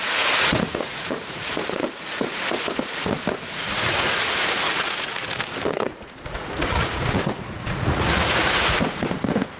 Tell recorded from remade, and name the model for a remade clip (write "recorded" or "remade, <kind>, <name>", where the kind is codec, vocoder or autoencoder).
remade, vocoder, Vocos